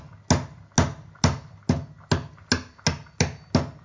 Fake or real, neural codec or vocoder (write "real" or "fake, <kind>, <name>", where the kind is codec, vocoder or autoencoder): real